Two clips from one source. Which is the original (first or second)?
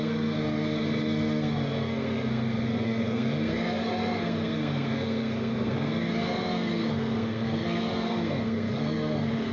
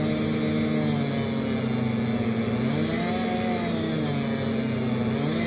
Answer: second